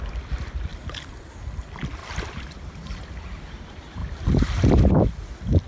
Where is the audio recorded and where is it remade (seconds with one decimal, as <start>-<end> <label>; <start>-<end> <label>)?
0.0-2.0 recorded; 2.0-2.6 remade; 2.6-4.0 recorded; 4.0-4.8 remade; 4.8-5.7 recorded